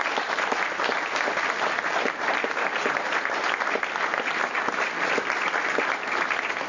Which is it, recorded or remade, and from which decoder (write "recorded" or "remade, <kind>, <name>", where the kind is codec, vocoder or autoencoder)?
recorded